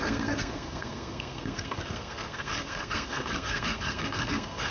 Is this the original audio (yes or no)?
no